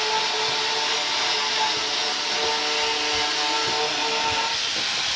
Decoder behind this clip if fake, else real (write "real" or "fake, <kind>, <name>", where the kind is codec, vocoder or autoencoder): real